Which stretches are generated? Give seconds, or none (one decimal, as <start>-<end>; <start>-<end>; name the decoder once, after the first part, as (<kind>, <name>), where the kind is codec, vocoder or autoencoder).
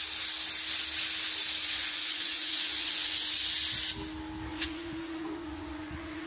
1.6-3.5 (vocoder, Vocos); 4.5-6.3